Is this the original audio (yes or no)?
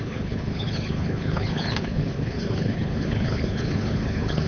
no